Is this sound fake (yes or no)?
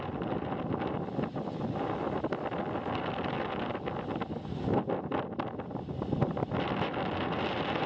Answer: no